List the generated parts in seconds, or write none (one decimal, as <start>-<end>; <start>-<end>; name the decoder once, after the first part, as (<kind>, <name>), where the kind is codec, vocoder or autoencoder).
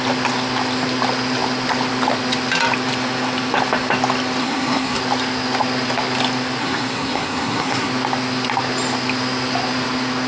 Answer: 4.4-5.0 (codec, SNAC); 6.6-7.9